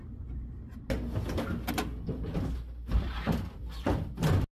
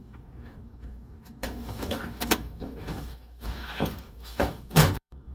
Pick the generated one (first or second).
second